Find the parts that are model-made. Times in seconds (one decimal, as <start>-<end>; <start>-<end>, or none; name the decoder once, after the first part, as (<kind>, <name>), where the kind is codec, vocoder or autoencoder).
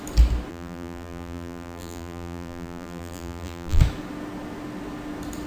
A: 0.5-3.8 (vocoder, BigVGAN v2)